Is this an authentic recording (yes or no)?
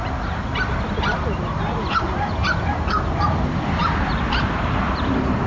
yes